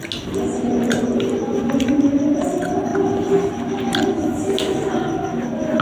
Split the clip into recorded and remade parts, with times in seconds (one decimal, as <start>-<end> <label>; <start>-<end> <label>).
0.0-5.8 recorded